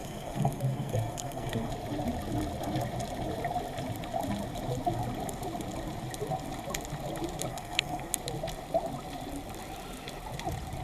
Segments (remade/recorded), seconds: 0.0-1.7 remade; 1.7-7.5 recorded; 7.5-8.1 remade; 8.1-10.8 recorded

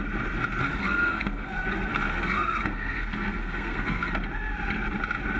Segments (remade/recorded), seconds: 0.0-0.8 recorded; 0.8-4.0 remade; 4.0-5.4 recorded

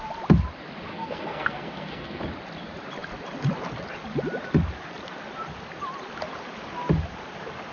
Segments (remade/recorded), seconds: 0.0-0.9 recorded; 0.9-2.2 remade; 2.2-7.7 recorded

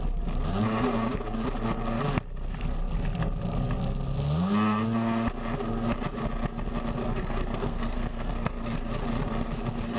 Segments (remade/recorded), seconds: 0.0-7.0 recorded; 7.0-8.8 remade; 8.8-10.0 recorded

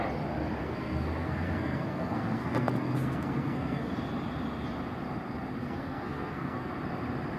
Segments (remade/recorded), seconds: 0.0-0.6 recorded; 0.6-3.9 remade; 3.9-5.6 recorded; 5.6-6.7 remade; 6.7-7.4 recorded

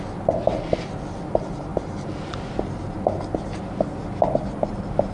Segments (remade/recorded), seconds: 0.0-5.1 recorded